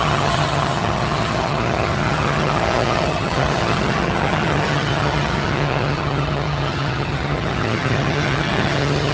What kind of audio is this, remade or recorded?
remade